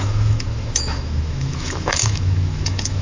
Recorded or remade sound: remade